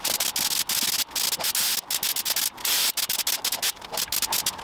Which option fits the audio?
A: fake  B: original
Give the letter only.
B